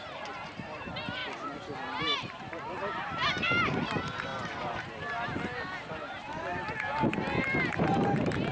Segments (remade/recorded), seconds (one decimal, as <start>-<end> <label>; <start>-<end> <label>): 0.0-1.2 remade; 1.2-2.0 recorded; 2.0-4.3 remade; 4.3-7.7 recorded; 7.7-8.5 remade